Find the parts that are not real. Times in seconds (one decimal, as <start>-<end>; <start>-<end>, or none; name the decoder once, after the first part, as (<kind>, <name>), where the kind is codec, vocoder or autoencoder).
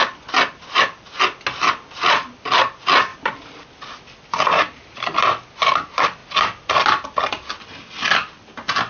none